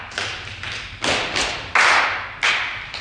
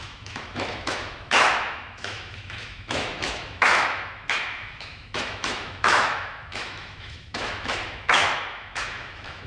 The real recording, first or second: first